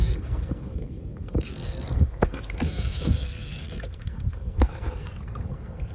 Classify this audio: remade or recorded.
remade